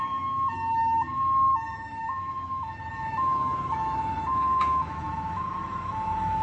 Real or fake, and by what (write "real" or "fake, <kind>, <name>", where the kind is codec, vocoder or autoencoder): fake, autoencoder, DAC-VAE